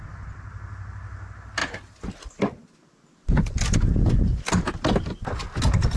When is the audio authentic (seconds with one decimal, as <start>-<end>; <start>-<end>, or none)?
0.0-6.0